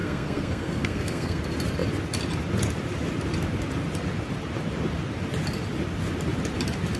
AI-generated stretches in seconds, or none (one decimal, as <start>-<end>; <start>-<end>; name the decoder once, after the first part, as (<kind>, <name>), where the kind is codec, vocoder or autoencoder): 0.0-1.4 (codec, SNAC)